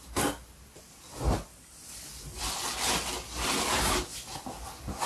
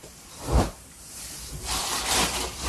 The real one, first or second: first